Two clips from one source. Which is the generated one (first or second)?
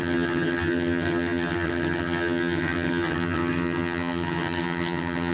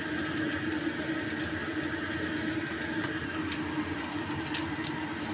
first